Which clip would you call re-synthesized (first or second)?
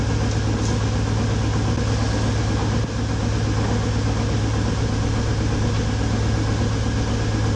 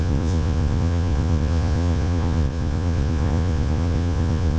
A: second